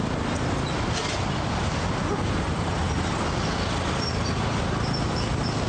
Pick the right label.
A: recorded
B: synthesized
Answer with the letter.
A